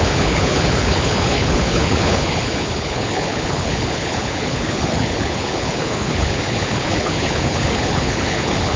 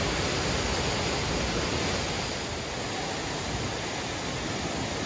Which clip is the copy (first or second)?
first